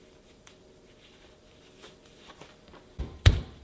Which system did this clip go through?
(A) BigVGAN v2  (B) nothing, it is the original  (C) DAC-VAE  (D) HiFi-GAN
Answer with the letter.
A